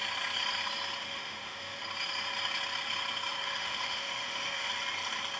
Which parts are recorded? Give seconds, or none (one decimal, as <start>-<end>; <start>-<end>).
0.0-1.0; 1.8-3.4; 4.7-5.4